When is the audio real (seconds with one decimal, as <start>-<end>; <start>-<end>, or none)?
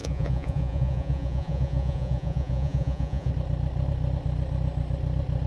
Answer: 3.3-5.5